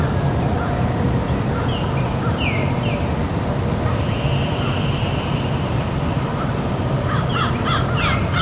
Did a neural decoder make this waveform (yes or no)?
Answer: no